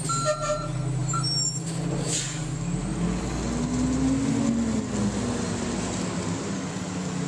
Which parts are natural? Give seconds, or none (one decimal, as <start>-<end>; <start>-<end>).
0.0-7.3